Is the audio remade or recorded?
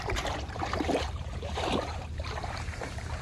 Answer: remade